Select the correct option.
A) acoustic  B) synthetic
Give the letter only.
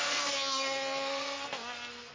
B